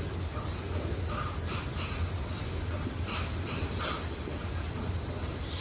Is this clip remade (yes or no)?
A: no